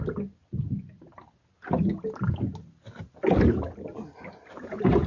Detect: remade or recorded recorded